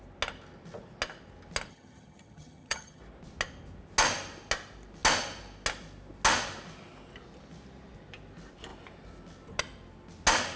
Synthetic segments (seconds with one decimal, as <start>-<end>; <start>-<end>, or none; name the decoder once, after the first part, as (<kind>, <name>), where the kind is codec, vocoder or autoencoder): 1.7-3.0 (vocoder, HiFi-GAN)